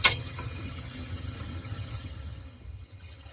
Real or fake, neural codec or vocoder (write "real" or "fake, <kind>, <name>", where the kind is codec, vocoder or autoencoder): fake, vocoder, HiFi-GAN